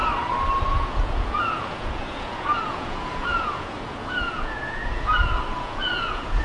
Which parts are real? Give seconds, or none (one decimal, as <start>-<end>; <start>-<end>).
0.0-0.6